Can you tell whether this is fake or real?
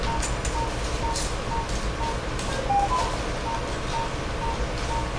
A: real